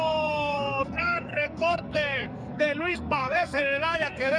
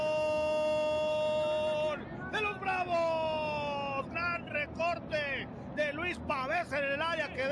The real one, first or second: second